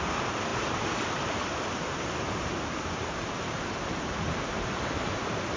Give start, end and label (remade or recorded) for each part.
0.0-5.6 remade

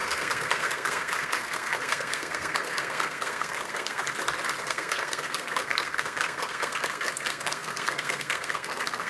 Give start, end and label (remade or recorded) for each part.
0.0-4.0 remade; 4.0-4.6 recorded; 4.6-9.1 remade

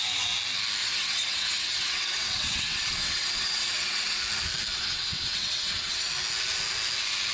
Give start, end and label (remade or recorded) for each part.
0.0-0.8 recorded; 0.8-4.2 remade; 4.2-4.7 recorded; 4.7-6.1 remade; 6.1-7.3 recorded

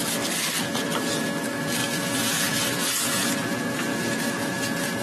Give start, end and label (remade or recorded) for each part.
0.0-1.8 recorded; 1.8-5.0 remade

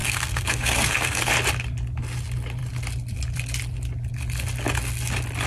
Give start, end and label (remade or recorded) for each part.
0.0-1.3 remade; 1.3-5.5 recorded